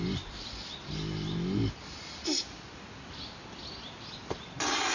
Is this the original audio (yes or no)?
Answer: yes